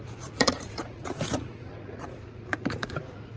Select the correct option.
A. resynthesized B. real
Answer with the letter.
A